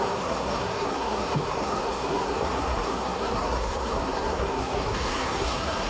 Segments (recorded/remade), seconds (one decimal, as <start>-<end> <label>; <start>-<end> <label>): 0.0-5.9 remade